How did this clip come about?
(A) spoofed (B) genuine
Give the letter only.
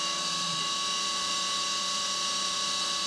A